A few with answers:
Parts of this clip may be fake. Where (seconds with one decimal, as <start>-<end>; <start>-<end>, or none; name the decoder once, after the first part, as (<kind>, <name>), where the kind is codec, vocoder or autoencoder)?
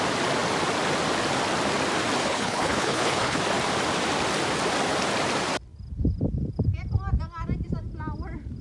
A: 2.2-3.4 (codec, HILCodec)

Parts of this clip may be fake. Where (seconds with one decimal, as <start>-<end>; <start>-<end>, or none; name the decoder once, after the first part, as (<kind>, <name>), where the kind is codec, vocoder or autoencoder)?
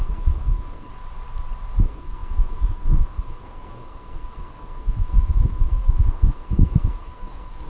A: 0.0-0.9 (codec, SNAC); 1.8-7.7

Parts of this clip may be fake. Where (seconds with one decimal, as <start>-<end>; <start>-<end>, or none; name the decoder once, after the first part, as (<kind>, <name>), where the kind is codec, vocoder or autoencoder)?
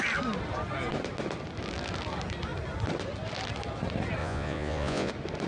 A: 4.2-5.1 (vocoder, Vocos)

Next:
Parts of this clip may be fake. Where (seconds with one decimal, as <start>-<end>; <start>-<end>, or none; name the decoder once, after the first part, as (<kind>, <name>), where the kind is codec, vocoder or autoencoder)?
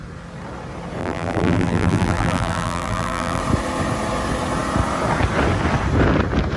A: 1.0-3.4 (vocoder, BigVGAN v2)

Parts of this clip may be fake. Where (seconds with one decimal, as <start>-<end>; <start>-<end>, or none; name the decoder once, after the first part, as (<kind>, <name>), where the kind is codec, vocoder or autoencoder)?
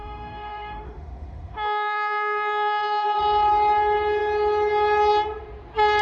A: 0.0-3.2 (autoencoder, DAC-VAE)